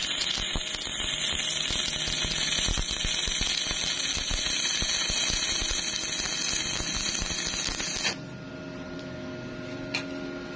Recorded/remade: recorded